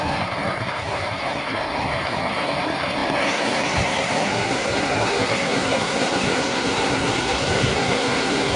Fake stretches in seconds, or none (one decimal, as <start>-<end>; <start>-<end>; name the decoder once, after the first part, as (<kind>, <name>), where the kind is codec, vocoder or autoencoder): 0.0-8.6 (codec, SNAC)